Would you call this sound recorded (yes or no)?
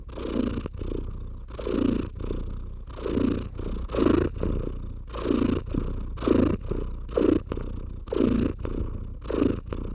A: yes